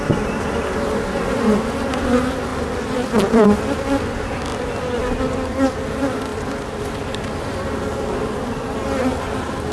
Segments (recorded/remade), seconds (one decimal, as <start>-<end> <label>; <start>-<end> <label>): 0.0-9.7 recorded